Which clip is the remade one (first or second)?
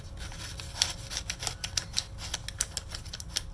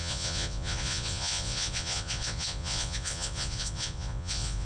second